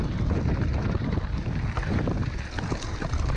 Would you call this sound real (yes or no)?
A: yes